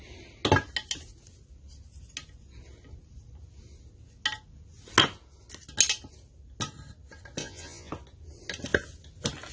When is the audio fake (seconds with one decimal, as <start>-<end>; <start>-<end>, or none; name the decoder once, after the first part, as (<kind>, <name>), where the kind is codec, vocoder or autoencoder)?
7.4-7.9 (vocoder, Vocos)